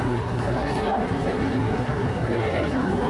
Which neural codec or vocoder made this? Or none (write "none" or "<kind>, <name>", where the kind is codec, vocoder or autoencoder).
codec, SNAC